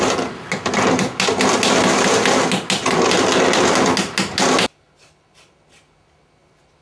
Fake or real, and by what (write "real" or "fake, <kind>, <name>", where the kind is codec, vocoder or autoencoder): real